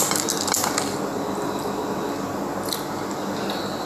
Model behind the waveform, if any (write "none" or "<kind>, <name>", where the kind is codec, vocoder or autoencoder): none